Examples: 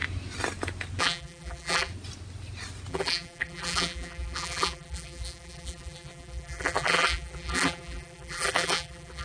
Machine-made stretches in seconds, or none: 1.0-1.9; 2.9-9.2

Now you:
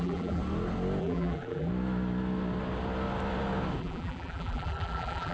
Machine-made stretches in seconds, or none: 0.0-0.4; 1.0-1.7; 3.8-5.3

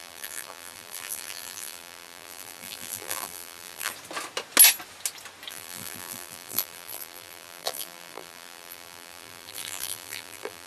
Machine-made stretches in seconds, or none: 0.0-3.9; 5.5-10.7

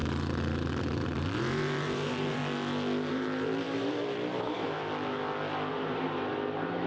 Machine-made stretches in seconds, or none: 0.8-2.4; 3.1-4.8; 5.7-6.9

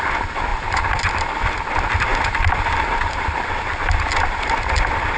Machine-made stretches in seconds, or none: 0.5-1.1; 2.1-3.5

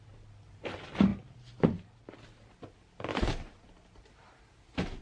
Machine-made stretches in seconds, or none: none